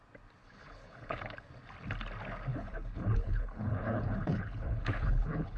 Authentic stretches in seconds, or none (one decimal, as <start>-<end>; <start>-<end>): 0.0-0.4; 1.5-2.5